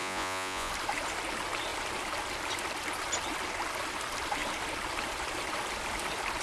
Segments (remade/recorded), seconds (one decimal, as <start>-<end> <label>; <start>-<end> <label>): 0.0-0.7 remade; 0.7-6.4 recorded